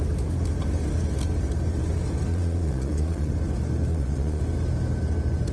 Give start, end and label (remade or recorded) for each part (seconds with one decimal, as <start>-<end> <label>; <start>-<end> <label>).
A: 0.0-2.3 recorded; 2.3-3.3 remade; 3.3-3.9 recorded; 3.9-4.4 remade; 4.4-5.5 recorded